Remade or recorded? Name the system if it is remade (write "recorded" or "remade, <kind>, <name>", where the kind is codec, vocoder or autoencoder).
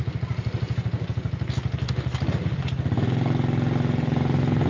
recorded